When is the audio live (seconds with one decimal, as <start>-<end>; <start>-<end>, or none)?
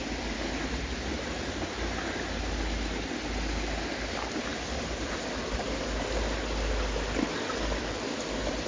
0.0-8.7